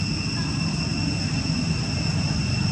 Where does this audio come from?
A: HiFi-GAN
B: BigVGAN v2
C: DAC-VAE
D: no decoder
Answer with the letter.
D